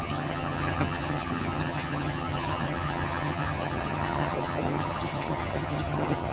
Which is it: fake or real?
fake